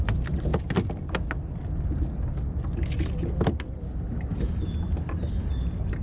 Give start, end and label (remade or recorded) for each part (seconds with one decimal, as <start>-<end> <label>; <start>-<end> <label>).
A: 0.0-6.0 recorded